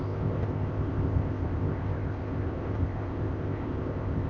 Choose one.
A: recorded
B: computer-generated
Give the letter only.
B